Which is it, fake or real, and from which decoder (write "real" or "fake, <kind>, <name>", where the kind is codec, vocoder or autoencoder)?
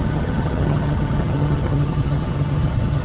fake, vocoder, HiFi-GAN